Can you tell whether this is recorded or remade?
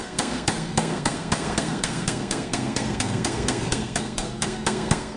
remade